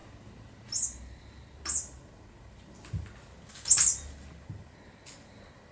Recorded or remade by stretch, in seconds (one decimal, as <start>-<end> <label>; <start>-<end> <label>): 0.0-5.7 recorded